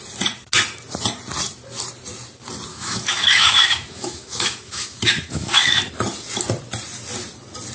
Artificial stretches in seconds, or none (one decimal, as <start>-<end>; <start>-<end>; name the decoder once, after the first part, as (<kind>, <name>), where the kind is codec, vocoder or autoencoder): 2.7-5.9 (autoencoder, DAC-VAE)